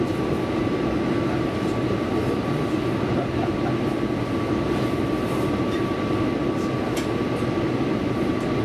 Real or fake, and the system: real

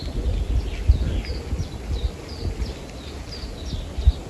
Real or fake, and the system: real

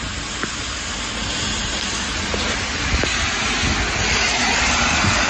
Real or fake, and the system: real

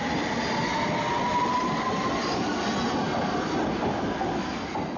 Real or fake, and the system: real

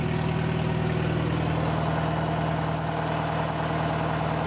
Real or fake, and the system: real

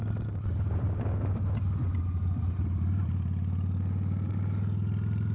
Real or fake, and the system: real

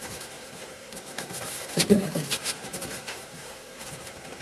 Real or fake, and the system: fake, codec, SNAC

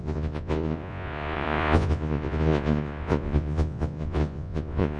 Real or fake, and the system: fake, vocoder, Vocos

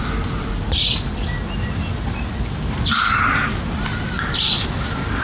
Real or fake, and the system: real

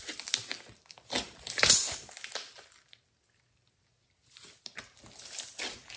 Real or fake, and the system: real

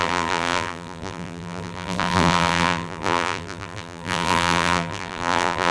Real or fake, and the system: fake, vocoder, BigVGAN v2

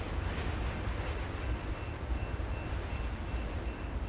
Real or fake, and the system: real